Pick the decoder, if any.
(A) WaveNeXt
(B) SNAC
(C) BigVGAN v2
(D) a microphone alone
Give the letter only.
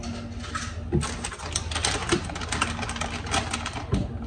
D